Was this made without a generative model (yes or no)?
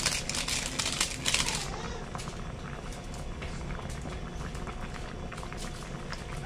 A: yes